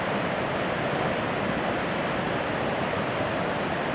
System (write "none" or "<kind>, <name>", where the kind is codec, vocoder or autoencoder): vocoder, BigVGAN v2